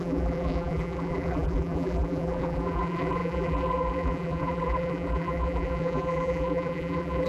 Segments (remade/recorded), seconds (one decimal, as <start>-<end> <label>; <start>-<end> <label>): 0.0-7.3 remade